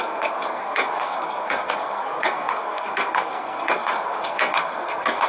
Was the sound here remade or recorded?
remade